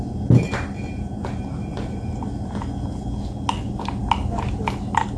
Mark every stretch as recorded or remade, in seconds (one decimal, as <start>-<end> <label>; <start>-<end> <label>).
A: 0.0-5.2 recorded